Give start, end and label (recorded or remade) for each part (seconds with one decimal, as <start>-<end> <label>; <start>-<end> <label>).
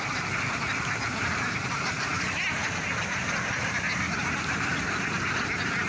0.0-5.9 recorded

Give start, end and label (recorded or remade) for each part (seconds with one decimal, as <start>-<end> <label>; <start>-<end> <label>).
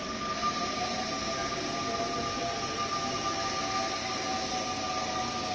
0.0-5.5 recorded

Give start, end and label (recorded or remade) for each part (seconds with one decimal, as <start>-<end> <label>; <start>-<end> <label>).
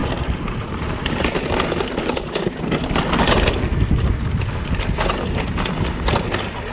0.0-6.7 recorded